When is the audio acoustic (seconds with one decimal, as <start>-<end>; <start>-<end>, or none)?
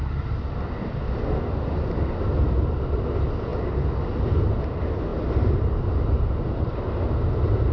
0.0-7.7